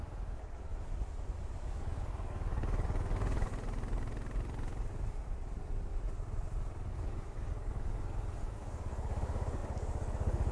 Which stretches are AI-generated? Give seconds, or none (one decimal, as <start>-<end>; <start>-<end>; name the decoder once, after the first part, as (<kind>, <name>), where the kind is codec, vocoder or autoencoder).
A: 0.0-0.7 (codec, DAC); 1.7-3.5; 6.9-10.5